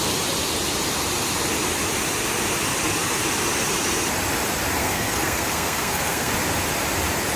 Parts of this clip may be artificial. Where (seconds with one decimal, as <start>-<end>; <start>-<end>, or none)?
4.8-6.3